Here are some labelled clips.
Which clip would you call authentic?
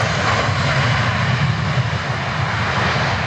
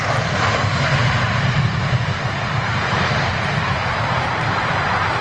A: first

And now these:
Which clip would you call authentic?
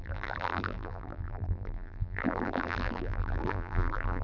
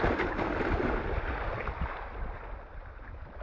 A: second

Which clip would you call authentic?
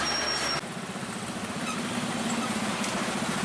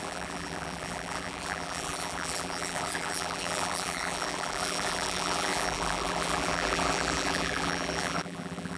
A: first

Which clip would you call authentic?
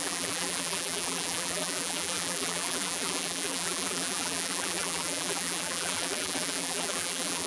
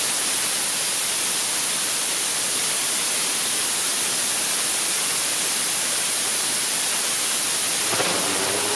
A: second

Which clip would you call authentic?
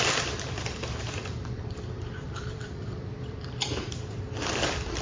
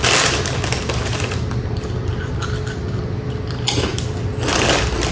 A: second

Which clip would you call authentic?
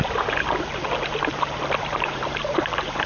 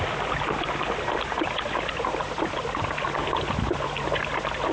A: second